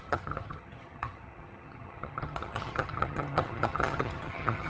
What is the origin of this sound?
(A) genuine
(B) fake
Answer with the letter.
B